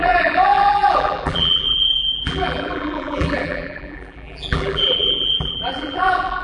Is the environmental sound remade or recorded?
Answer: remade